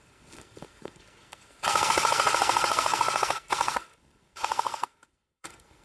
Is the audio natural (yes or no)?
no